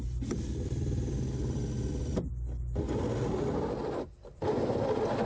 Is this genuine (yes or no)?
yes